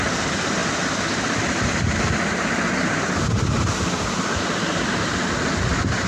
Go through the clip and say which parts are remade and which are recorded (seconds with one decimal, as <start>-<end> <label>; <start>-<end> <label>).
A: 0.0-6.1 recorded

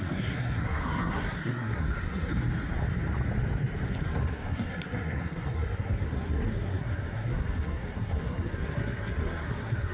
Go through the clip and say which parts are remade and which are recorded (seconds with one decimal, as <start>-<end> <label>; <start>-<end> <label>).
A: 0.0-2.3 remade; 2.3-4.0 recorded; 4.0-9.9 remade